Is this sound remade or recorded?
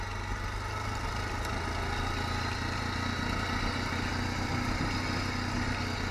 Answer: recorded